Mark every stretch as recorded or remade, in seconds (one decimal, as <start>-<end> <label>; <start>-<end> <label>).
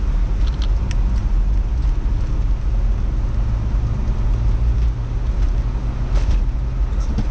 0.0-7.3 recorded